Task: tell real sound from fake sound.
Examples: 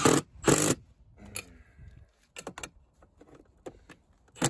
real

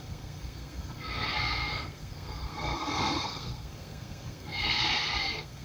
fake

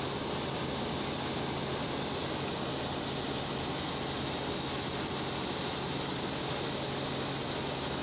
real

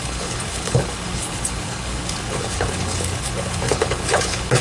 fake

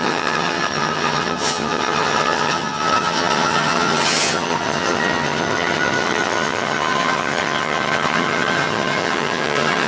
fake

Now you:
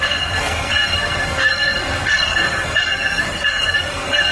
fake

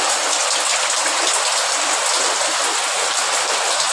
real